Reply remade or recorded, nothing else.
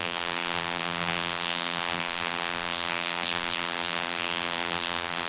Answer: remade